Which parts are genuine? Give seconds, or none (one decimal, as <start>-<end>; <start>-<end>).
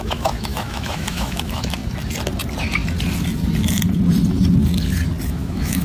1.8-5.3